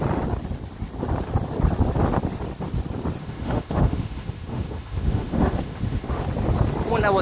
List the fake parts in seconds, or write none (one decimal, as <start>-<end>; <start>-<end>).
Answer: 3.2-6.2